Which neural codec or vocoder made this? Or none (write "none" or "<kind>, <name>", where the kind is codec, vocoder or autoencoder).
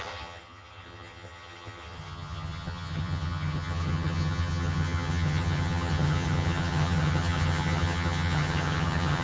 vocoder, HiFi-GAN